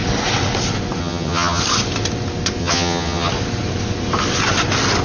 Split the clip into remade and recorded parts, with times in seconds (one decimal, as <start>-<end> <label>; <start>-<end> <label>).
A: 0.0-1.0 recorded; 1.0-1.6 remade; 1.6-2.6 recorded; 2.6-3.3 remade; 3.3-5.0 recorded